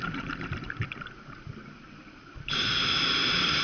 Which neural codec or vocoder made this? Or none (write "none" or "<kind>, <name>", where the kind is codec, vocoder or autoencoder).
none